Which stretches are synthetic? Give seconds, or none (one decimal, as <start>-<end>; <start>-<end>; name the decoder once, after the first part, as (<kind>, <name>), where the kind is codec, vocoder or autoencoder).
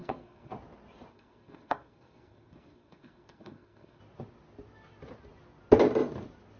0.0-0.5 (codec, SNAC); 1.1-4.0